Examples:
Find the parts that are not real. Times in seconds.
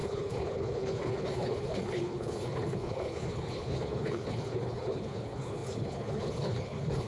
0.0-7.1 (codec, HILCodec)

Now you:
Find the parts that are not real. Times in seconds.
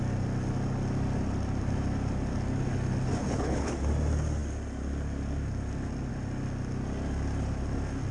3.2-3.7 (codec, HILCodec)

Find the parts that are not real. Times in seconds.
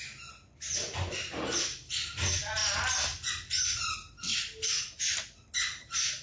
none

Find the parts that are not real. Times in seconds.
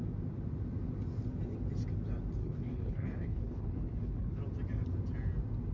2.4-4.4 (codec, HILCodec)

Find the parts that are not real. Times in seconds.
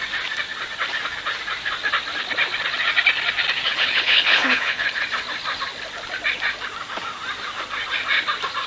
3.7-5.0 (codec, HILCodec)